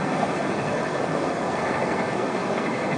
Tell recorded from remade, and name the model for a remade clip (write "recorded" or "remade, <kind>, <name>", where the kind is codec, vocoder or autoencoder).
remade, codec, SNAC